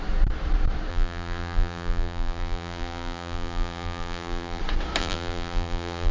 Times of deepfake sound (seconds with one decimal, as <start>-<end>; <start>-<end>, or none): 0.9-4.6; 5.0-6.1